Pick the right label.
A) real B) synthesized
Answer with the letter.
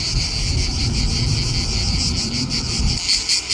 A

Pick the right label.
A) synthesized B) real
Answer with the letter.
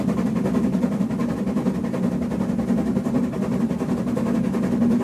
B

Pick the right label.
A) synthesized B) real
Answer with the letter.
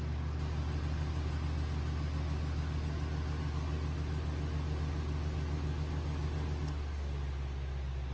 B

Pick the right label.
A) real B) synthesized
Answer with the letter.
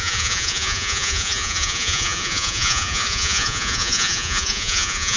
B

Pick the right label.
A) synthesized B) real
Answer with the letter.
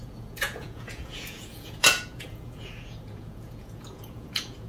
A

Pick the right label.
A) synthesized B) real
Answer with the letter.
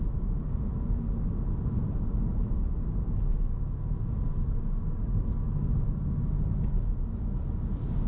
B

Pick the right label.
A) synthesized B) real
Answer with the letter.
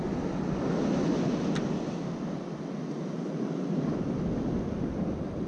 B